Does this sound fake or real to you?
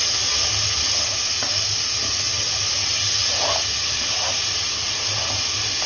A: real